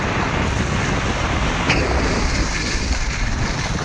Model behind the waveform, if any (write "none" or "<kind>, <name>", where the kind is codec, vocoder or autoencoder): none